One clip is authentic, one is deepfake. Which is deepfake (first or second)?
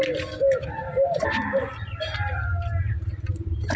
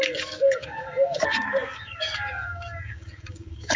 second